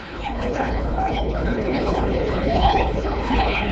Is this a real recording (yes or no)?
no